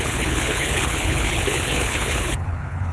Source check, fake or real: fake